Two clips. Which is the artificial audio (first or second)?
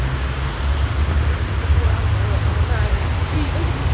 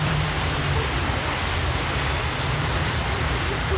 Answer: second